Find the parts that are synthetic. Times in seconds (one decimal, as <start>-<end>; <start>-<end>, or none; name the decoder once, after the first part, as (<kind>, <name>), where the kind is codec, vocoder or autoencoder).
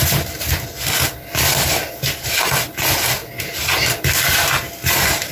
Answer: none